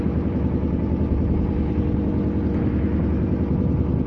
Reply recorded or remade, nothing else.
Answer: recorded